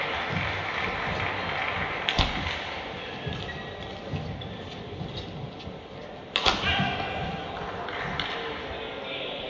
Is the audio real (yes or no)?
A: yes